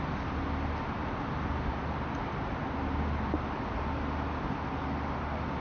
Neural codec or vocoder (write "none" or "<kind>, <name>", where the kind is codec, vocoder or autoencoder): none